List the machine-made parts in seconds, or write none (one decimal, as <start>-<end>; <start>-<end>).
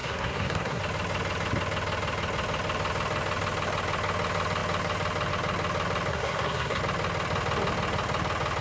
0.0-0.8; 6.1-6.8